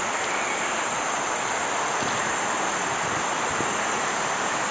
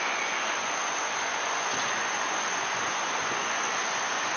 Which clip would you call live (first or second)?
first